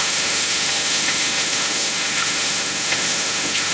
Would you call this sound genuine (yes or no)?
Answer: no